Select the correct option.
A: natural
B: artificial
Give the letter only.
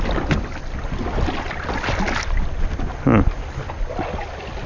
A